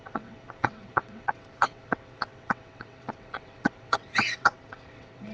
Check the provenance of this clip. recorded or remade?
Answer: remade